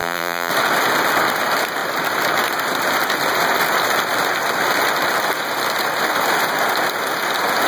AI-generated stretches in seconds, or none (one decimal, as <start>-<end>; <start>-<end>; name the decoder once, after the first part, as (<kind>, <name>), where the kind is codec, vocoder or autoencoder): 0.0-0.5 (vocoder, BigVGAN v2)